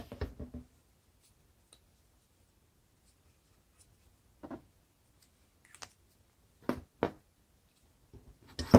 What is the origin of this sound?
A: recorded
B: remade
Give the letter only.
A